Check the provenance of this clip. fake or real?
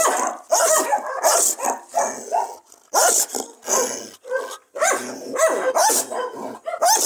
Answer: real